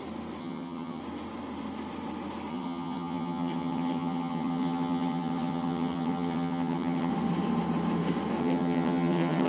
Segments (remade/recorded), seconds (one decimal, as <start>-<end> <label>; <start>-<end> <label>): 0.0-0.4 recorded; 0.4-1.0 remade; 1.0-2.5 recorded; 2.5-7.1 remade; 7.1-8.4 recorded; 8.4-9.5 remade